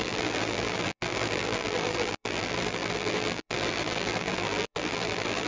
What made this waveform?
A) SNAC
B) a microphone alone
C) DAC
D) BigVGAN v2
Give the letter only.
D